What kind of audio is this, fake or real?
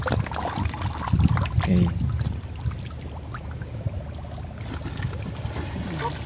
real